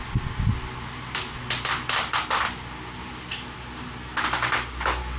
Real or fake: real